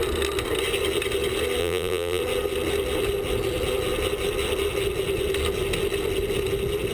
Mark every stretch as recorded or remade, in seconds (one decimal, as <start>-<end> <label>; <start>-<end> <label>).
0.0-1.6 recorded; 1.6-2.2 remade; 2.2-6.9 recorded